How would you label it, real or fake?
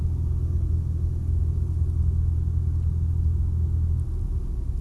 real